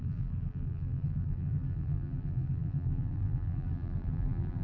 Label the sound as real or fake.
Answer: fake